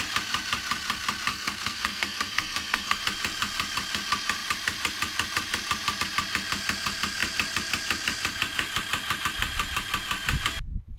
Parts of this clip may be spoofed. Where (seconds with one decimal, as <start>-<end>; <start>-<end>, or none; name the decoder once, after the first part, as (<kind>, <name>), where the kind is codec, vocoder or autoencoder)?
1.3-3.0 (codec, SNAC)